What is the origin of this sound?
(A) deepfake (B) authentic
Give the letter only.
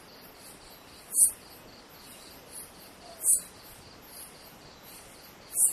B